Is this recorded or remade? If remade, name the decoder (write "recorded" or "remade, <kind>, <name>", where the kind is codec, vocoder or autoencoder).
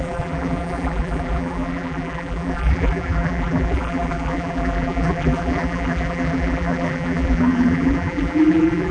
remade, vocoder, BigVGAN v2